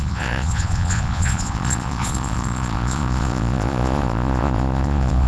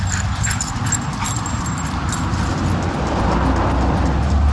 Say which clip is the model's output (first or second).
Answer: first